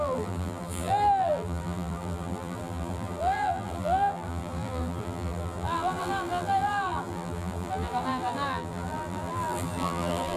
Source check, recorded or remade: remade